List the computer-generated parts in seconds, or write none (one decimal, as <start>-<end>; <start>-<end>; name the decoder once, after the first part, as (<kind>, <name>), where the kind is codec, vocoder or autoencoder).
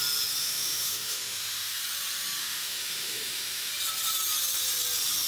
0.4-1.8 (autoencoder, DAC-VAE); 2.4-3.7